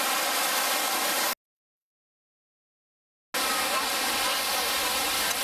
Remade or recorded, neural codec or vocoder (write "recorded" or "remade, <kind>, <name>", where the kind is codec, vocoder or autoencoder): recorded